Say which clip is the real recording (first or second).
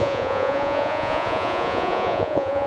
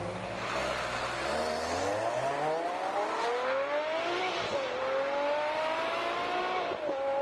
second